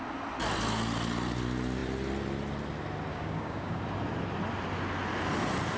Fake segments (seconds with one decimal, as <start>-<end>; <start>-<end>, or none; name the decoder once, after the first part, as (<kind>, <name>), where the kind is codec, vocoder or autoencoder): 3.1-3.8 (codec, DAC)